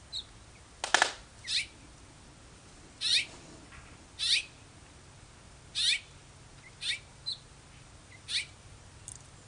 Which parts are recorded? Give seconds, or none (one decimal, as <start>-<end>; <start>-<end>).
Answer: 0.0-9.5